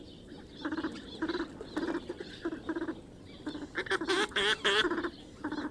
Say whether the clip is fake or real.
real